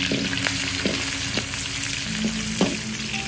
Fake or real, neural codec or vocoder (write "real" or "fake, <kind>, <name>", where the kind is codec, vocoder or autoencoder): real